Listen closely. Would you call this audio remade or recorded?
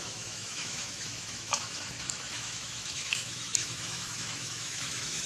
remade